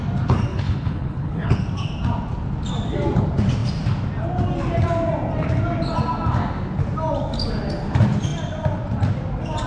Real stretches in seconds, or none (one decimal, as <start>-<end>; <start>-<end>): 0.0-0.5; 1.6-9.7